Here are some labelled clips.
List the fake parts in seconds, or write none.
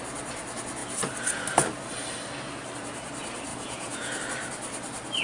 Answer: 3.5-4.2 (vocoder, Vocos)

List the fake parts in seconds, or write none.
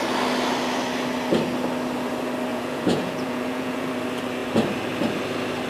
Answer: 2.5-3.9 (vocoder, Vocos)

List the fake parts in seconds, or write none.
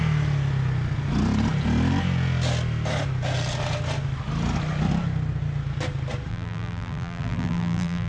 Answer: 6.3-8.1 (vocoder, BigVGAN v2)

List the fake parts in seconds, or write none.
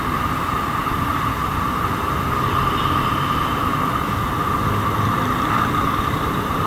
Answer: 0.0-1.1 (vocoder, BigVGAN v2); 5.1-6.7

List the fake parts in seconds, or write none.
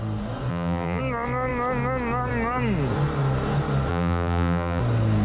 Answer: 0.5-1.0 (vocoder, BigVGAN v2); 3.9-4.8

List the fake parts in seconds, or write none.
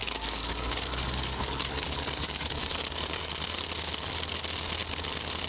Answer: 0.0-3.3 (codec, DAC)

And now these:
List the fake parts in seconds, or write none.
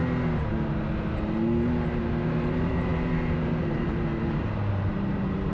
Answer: 2.0-4.1 (vocoder, BigVGAN v2); 4.7-5.5